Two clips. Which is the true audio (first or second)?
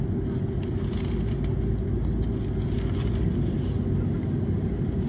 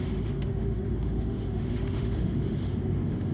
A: first